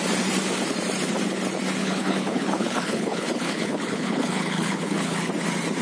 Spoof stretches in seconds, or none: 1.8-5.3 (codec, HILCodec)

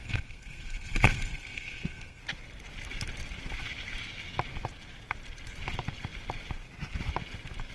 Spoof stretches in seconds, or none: 0.0-2.2 (codec, SNAC)

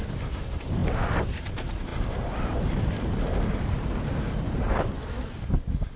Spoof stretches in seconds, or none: none

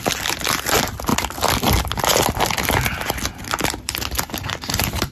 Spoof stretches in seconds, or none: none

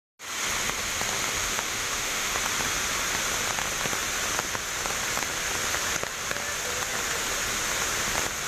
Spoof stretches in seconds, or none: 1.4-2.3 (autoencoder, DAC-VAE)

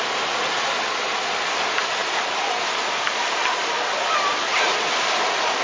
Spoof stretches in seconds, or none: 2.0-5.6 (vocoder, BigVGAN v2)

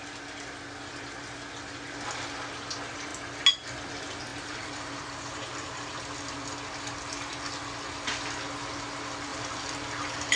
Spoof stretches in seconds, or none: 4.3-6.0 (vocoder, BigVGAN v2); 9.3-10.4